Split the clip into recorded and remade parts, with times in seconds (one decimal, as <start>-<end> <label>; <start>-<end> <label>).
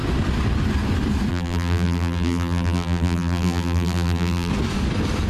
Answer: 0.0-1.3 recorded; 1.3-4.5 remade; 4.5-5.3 recorded